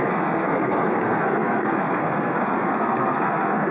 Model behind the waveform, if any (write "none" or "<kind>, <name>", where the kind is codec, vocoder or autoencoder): codec, SNAC